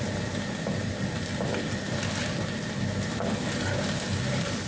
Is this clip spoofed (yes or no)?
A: no